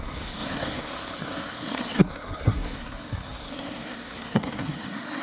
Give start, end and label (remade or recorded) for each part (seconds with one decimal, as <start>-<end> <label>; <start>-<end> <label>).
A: 0.0-5.2 remade